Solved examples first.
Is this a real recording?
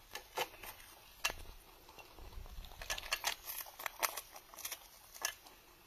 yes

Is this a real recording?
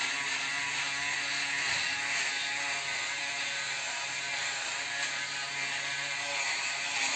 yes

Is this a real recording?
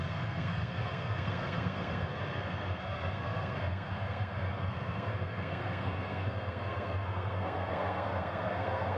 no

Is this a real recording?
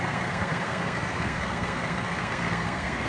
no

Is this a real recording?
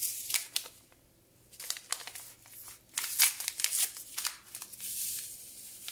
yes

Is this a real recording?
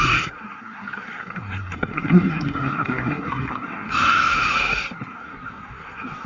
no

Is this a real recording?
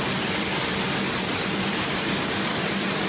yes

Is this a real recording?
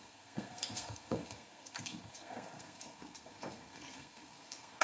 no